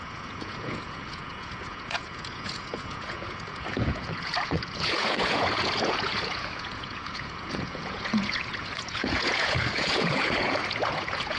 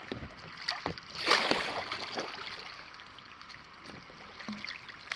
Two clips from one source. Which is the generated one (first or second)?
first